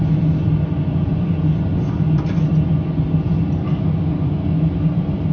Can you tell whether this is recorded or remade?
recorded